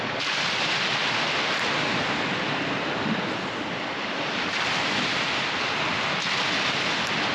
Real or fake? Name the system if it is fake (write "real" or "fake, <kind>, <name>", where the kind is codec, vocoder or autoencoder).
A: real